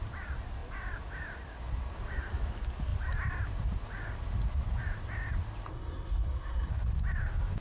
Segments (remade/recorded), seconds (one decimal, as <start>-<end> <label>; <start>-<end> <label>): 0.0-5.7 recorded; 5.7-6.7 remade; 6.7-7.6 recorded